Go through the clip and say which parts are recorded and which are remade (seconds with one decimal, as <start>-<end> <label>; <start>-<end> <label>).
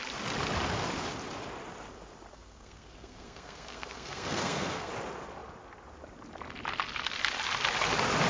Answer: 0.0-2.3 recorded; 2.3-4.9 remade; 4.9-8.3 recorded